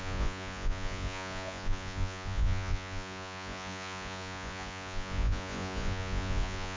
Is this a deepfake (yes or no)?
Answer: yes